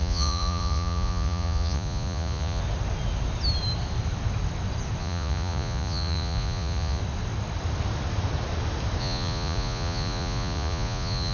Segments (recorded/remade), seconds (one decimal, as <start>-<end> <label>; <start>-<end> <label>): 0.0-2.6 remade; 2.6-5.0 recorded; 5.0-7.0 remade; 7.0-9.0 recorded; 9.0-11.3 remade